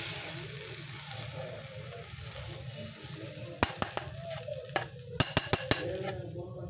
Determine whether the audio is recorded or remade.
recorded